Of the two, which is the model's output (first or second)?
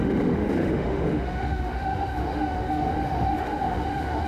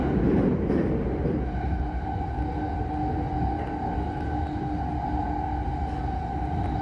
first